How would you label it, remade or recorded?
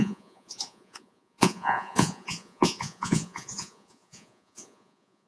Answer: remade